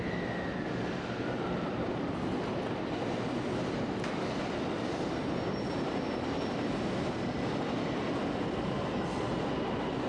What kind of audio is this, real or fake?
real